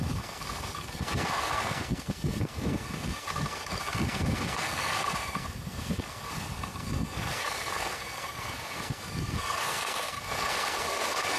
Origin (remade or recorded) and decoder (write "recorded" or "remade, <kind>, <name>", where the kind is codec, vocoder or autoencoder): remade, codec, SNAC